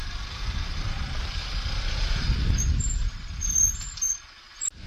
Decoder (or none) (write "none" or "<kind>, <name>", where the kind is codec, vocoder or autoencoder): none